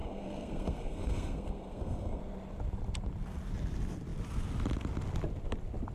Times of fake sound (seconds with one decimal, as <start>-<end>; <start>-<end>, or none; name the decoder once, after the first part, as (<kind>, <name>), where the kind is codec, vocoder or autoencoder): 0.0-2.2 (codec, SNAC)